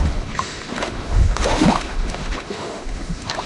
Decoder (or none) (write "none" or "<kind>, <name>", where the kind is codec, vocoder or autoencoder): autoencoder, DAC-VAE